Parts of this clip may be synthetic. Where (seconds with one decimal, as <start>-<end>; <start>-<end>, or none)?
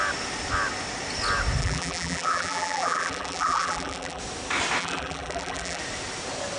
1.6-4.2; 4.8-5.8